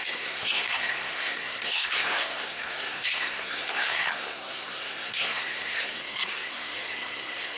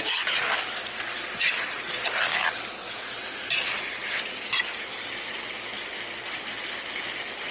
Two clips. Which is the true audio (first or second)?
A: second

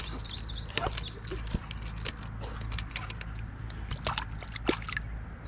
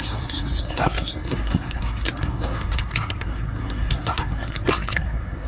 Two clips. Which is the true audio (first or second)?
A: first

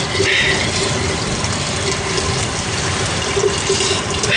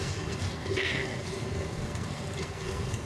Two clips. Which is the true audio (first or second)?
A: first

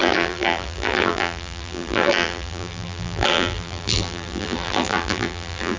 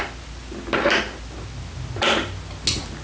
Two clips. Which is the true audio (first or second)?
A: second